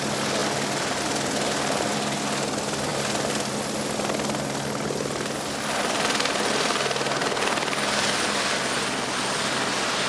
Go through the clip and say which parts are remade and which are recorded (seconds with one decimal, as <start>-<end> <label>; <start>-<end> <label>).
0.0-10.1 recorded